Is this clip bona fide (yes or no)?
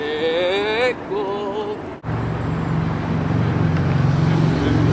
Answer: yes